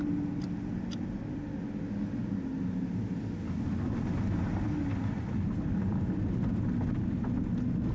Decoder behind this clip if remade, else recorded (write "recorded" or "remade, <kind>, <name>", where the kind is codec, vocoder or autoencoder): recorded